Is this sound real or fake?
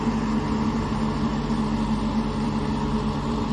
real